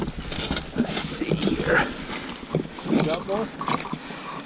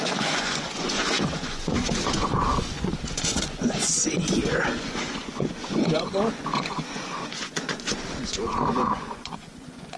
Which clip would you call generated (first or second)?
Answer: second